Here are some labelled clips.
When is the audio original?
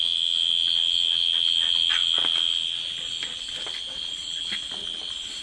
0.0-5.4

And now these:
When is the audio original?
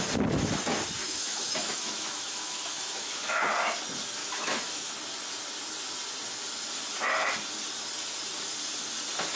0.0-1.0; 3.4-4.2; 4.9-9.4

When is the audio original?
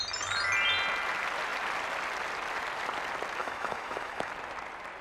0.0-3.4; 4.3-5.0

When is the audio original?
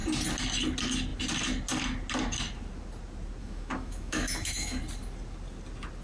0.0-3.4; 4.8-6.0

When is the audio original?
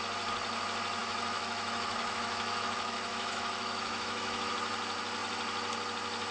0.0-1.0; 4.5-6.3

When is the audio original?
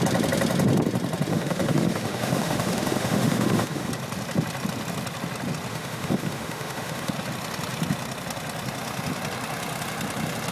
0.0-1.3; 3.9-5.7; 7.1-10.5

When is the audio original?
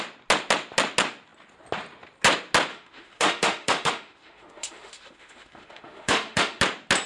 0.0-2.7; 6.6-7.1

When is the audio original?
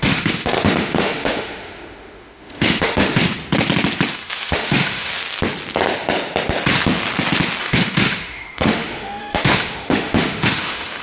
3.2-4.1; 5.1-7.6